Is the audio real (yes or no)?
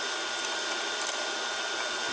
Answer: no